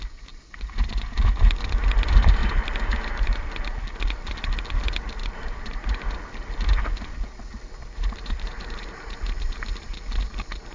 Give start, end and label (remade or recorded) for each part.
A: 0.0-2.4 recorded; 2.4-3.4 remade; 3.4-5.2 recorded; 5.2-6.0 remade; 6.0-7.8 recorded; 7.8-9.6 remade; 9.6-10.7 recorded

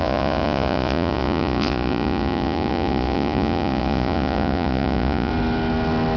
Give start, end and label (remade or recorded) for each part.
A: 0.0-5.3 remade; 5.3-6.2 recorded

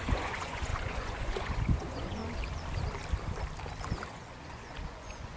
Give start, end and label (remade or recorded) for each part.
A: 0.0-2.2 remade; 2.2-4.1 recorded; 4.1-5.4 remade

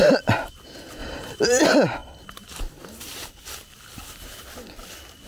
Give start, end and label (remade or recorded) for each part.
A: 0.0-5.3 recorded

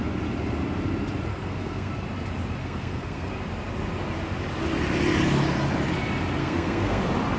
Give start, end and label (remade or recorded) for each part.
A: 0.0-1.3 recorded; 1.3-1.9 remade; 1.9-2.6 recorded; 2.6-3.3 remade; 3.3-6.4 recorded; 6.4-7.0 remade; 7.0-7.4 recorded

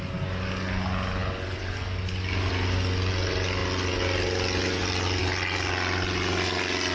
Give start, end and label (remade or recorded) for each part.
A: 0.0-6.9 recorded

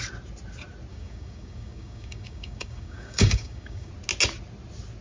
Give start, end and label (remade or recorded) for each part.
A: 0.0-0.9 recorded; 0.9-3.9 remade; 3.9-5.0 recorded

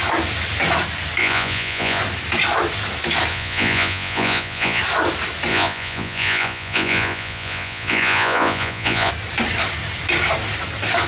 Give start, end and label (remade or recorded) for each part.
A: 0.0-1.2 recorded; 1.2-2.0 remade; 2.0-3.3 recorded; 3.3-4.8 remade; 4.8-5.5 recorded; 5.5-9.1 remade; 9.1-11.1 recorded